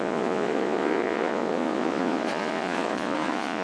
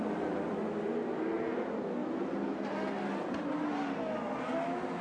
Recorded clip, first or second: second